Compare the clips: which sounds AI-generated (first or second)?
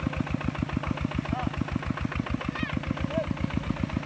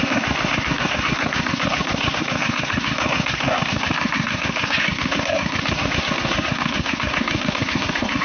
second